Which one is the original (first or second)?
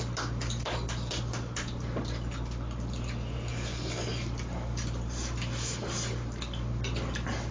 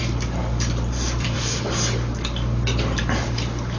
first